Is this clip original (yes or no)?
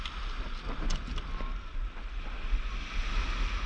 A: yes